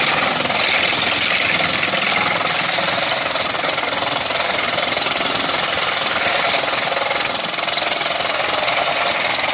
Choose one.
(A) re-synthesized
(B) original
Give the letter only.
B